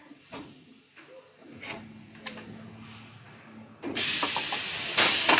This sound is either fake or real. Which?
real